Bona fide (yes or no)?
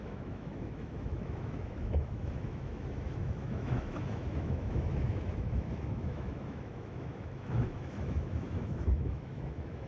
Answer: no